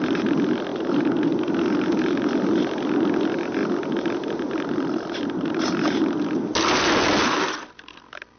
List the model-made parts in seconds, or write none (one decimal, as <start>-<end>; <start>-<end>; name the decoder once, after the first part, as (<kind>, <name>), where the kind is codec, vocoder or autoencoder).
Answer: none